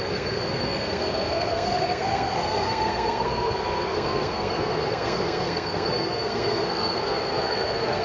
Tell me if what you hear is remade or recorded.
remade